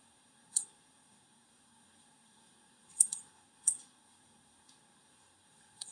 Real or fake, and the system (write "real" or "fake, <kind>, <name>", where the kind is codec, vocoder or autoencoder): fake, codec, SNAC